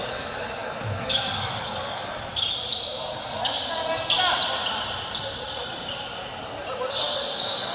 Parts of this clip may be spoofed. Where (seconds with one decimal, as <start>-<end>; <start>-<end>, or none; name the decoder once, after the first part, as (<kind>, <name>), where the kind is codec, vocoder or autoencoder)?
0.0-2.3 (codec, DAC); 6.9-7.7